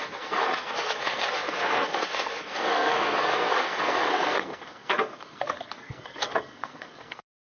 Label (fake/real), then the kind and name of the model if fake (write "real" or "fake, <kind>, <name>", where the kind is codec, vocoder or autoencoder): fake, codec, SNAC